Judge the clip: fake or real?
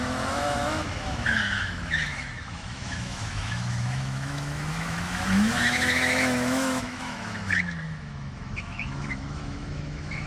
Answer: fake